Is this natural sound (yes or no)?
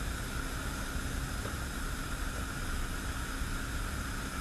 yes